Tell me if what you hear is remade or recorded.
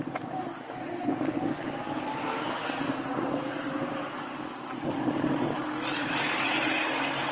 recorded